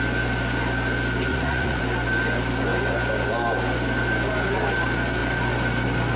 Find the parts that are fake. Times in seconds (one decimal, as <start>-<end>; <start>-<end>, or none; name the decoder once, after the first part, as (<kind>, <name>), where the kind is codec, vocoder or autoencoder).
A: 1.3-1.8 (vocoder, Vocos)